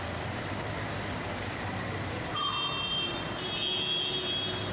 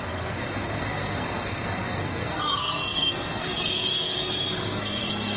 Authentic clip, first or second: first